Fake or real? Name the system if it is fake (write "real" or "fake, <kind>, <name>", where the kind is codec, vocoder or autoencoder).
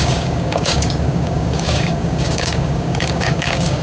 fake, codec, DAC